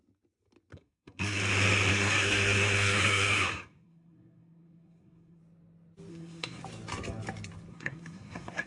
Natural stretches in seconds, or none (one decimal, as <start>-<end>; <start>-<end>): 0.0-0.7; 1.4-1.9; 5.4-6.1; 6.6-7.7